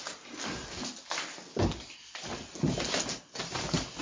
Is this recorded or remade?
recorded